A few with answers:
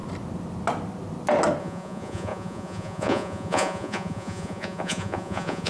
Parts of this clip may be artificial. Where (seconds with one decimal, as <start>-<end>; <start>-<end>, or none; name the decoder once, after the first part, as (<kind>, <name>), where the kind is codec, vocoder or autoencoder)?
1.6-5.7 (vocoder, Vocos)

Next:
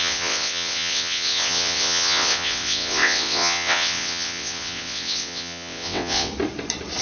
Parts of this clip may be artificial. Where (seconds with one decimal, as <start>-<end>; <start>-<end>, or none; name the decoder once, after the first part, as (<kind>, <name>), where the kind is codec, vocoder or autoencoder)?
0.0-6.3 (vocoder, WaveNeXt)

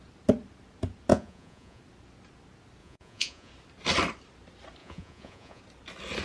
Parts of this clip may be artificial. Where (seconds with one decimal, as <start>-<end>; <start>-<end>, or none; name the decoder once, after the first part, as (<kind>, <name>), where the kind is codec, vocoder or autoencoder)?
1.1-1.8 (vocoder, Vocos); 2.8-3.5; 4.8-5.6

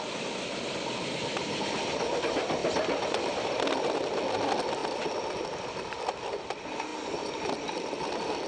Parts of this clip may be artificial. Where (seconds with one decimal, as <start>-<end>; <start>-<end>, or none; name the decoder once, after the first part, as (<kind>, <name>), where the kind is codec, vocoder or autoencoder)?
none

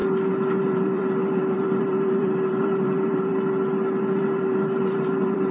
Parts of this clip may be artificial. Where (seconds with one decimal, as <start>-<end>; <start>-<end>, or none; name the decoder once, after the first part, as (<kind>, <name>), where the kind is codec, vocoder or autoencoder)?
0.6-3.3 (vocoder, BigVGAN v2); 4.2-5.5

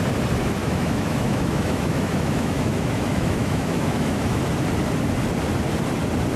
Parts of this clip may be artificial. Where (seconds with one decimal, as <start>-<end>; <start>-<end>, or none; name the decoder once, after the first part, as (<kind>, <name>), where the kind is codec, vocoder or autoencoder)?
0.6-4.4 (autoencoder, DAC-VAE)

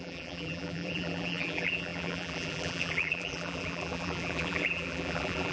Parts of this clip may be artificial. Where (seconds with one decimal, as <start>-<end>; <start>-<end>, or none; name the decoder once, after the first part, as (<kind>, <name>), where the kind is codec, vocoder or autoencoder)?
0.0-5.5 (vocoder, BigVGAN v2)

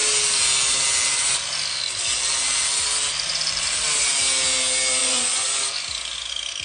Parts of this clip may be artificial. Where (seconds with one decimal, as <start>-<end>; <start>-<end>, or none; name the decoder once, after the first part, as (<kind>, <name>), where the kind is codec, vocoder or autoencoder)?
5.0-5.6 (vocoder, Vocos)